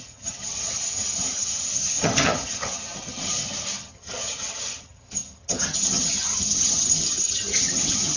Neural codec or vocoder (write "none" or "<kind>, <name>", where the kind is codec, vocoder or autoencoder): vocoder, HiFi-GAN